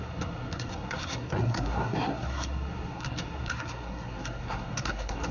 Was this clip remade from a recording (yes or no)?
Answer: yes